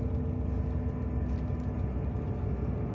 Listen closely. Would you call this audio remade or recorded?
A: recorded